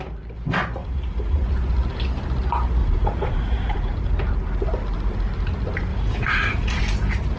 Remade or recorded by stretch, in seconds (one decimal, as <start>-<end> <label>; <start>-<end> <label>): 0.0-0.8 recorded; 0.8-1.5 remade; 1.5-2.8 recorded; 2.8-4.1 remade; 4.1-5.9 recorded; 5.9-6.8 remade; 6.8-7.4 recorded

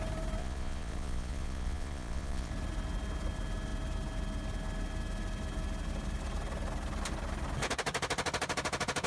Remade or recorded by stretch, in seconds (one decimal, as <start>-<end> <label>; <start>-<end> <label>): 0.0-0.4 recorded; 0.4-2.5 remade; 2.5-9.1 recorded

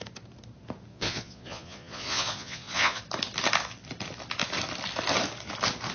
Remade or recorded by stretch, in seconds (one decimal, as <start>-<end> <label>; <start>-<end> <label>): 0.0-0.9 recorded; 0.9-3.0 remade; 3.0-5.9 recorded